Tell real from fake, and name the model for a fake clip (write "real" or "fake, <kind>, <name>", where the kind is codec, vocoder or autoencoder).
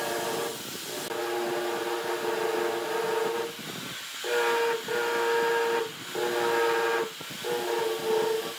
real